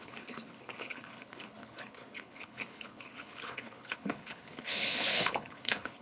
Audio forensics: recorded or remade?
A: remade